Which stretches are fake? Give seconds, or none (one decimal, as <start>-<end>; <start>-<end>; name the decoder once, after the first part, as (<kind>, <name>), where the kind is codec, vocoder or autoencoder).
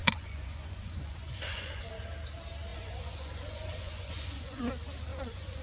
0.0-1.9 (vocoder, Vocos); 2.7-4.6; 5.1-5.6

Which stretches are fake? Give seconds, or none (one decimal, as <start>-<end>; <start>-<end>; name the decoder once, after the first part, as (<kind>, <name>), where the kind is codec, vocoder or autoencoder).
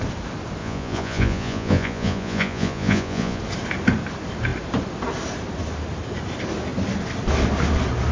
0.6-3.4 (vocoder, Vocos)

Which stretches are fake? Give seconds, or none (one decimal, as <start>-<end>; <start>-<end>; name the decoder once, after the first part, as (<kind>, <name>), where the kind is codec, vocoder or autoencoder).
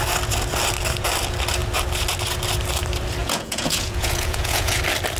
3.2-4.8 (vocoder, Vocos)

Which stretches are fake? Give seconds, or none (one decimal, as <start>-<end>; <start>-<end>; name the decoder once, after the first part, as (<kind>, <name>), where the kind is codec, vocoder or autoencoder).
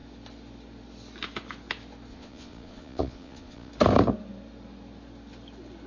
2.1-3.7 (vocoder, Vocos)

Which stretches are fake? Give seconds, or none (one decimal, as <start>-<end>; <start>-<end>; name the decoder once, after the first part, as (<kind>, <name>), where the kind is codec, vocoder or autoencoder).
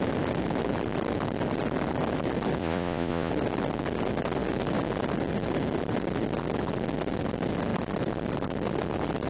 2.6-3.3 (vocoder, Vocos)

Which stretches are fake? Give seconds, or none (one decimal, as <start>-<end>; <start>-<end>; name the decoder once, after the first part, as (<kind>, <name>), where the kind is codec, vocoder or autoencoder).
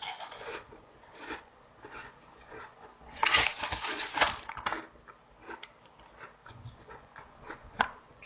0.0-4.3 (vocoder, Vocos); 6.5-8.2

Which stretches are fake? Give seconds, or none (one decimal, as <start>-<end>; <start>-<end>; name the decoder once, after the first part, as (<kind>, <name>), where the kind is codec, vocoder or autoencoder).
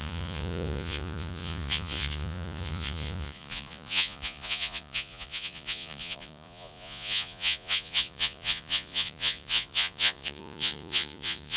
0.0-11.6 (vocoder, Vocos)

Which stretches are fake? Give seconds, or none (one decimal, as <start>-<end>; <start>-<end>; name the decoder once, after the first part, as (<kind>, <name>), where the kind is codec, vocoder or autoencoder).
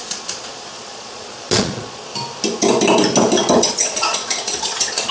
0.0-2.1 (vocoder, Vocos); 3.6-5.1